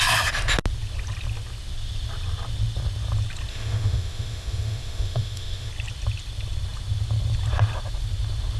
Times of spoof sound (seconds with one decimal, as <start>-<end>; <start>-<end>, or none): 3.5-5.7